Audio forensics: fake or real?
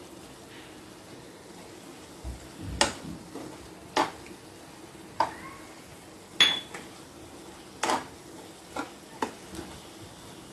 real